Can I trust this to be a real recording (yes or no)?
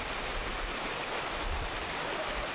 yes